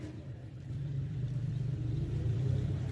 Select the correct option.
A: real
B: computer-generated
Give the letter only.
B